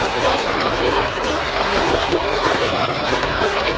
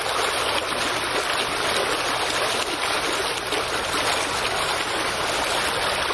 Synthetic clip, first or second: first